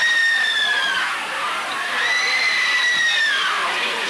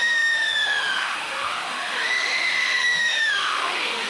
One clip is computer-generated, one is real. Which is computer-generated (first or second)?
second